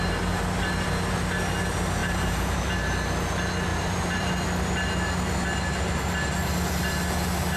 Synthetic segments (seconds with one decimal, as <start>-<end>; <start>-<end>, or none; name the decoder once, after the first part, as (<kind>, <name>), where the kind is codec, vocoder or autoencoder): 2.0-2.7 (vocoder, BigVGAN v2); 3.7-4.3